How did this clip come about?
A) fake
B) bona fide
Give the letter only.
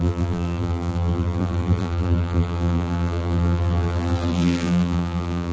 A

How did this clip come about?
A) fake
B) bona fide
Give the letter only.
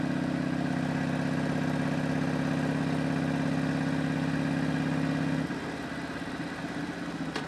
B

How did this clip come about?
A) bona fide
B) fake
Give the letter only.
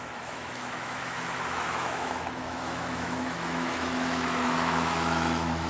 B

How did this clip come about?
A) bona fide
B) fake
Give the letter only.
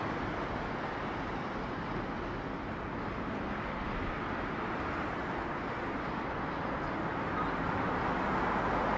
A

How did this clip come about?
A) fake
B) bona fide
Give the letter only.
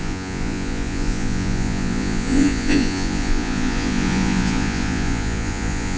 A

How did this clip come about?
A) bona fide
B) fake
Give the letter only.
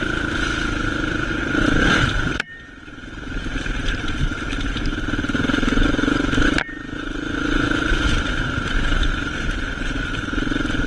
B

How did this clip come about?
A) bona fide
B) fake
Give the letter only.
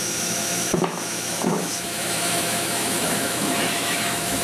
B